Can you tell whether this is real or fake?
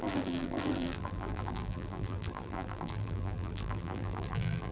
fake